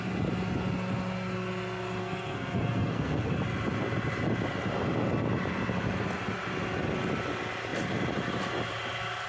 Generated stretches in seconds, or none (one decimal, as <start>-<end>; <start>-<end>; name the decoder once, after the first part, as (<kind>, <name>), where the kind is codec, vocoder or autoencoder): 2.0-3.3 (codec, SNAC)